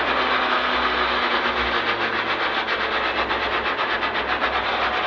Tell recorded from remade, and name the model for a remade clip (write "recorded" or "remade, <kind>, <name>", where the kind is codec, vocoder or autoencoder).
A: recorded